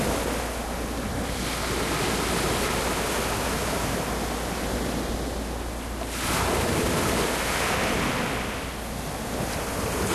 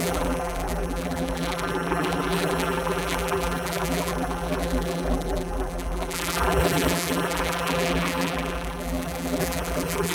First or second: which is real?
first